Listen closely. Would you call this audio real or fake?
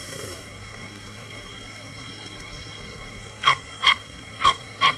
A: fake